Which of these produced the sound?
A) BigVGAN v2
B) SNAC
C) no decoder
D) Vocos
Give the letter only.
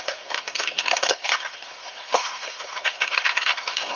B